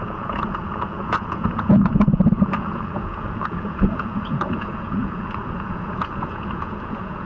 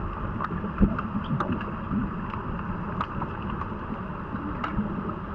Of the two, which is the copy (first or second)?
first